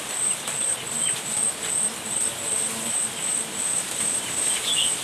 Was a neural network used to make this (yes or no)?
yes